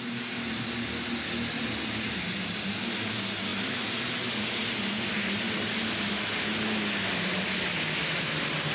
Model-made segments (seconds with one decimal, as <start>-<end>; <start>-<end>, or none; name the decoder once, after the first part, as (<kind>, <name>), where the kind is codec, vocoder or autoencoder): none